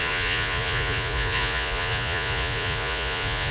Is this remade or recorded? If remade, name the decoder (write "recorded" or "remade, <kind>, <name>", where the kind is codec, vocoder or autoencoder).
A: remade, vocoder, Vocos